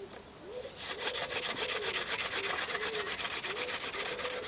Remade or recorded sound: recorded